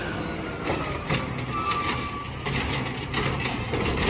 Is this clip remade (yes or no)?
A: no